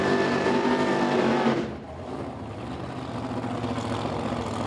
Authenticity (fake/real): real